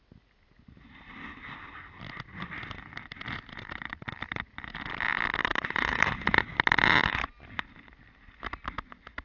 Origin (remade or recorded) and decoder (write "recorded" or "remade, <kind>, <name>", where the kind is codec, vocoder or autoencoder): recorded